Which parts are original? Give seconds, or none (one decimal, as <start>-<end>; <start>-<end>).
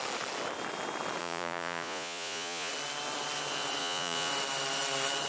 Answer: 0.0-1.2; 2.7-3.8; 4.3-5.3